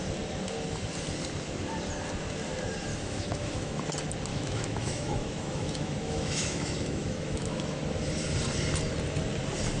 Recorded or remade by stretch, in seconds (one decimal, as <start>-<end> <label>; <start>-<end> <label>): 0.0-2.9 recorded; 2.9-3.8 remade; 3.8-4.3 recorded; 4.3-7.8 remade; 7.8-9.8 recorded